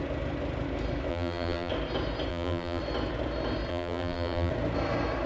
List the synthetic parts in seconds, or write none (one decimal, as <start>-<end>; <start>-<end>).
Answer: 1.1-1.7; 2.3-2.8; 3.7-4.5